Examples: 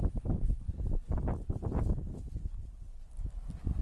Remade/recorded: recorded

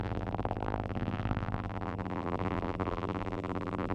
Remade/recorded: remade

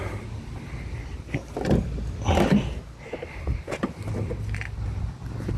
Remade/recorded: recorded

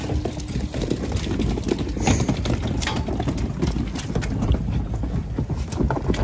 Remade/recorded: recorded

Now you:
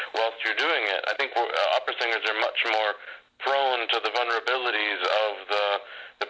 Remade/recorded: recorded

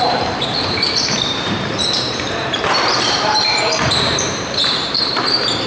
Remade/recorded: remade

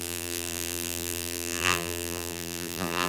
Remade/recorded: remade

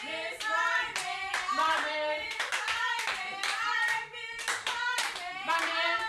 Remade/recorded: remade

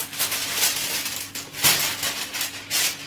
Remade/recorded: recorded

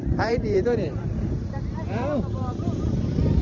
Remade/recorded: remade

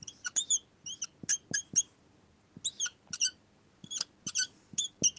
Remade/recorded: recorded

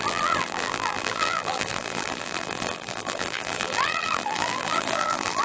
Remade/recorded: remade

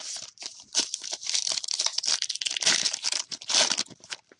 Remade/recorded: remade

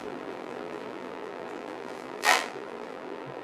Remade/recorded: remade